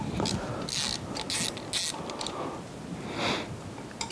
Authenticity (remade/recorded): recorded